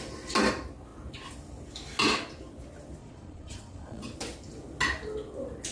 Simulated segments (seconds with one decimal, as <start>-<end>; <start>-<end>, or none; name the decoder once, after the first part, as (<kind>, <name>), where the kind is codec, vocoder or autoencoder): 3.0-4.0 (vocoder, Vocos)

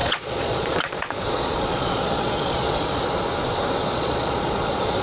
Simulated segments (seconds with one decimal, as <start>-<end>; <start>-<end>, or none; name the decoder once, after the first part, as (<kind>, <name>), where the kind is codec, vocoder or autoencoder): 0.0-3.0 (vocoder, Vocos); 3.8-5.0

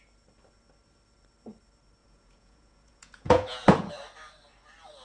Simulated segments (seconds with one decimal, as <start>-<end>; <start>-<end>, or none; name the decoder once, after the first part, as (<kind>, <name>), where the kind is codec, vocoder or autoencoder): 2.0-3.9 (vocoder, Vocos)

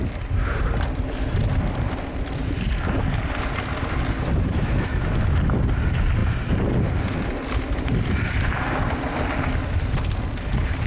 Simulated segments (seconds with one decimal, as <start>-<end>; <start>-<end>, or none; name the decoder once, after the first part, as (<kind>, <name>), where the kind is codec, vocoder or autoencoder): none

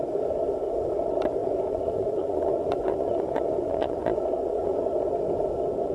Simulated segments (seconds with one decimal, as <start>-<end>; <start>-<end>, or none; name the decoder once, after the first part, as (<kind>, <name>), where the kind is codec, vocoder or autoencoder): 1.4-4.9 (vocoder, Vocos)

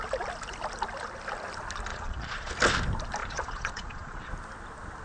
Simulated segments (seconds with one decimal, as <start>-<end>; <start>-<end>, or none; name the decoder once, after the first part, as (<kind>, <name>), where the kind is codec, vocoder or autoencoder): 1.9-2.5 (vocoder, Vocos); 3.2-4.3